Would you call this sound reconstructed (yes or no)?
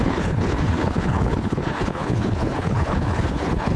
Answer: yes